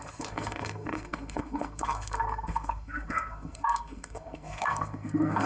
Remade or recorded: remade